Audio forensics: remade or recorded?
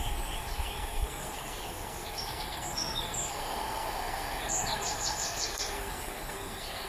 remade